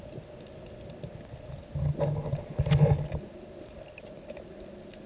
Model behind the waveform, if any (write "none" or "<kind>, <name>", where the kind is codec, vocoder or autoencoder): none